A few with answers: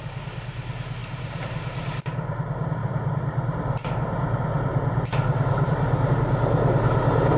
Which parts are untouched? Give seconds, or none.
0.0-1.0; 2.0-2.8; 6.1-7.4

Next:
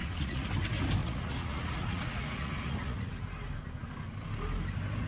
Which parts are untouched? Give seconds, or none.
0.5-1.0; 3.1-5.1

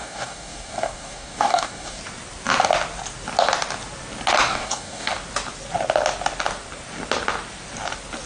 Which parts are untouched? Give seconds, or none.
2.0-4.5; 5.1-8.3